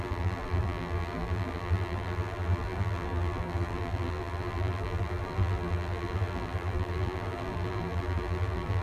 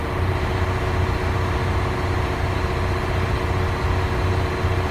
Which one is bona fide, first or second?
second